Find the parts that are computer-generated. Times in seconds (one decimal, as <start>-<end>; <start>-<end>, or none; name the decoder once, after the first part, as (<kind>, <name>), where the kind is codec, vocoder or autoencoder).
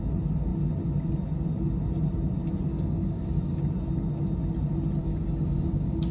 2.7-3.6 (codec, DAC); 5.0-6.1